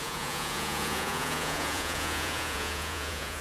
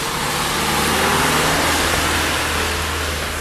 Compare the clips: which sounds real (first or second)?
second